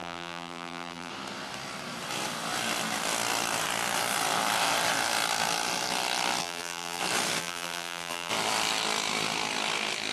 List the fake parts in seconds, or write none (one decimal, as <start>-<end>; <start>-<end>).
0.0-1.1; 6.4-7.0; 7.4-8.3